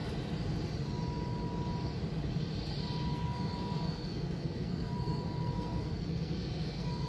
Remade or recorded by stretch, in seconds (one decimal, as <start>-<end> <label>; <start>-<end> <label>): 0.0-3.1 recorded; 3.1-7.1 remade